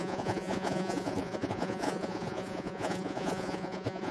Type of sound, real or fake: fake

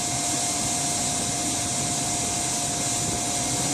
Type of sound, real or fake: real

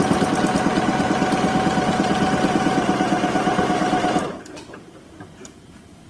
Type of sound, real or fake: fake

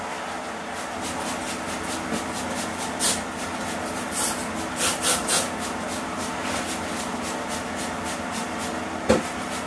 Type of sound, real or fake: real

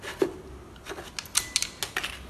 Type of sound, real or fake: real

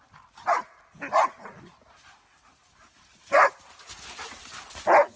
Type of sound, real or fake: real